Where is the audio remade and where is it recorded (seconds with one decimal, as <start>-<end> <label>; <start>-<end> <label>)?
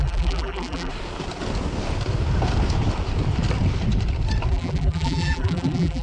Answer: 0.0-0.9 remade; 0.9-4.5 recorded; 4.5-6.0 remade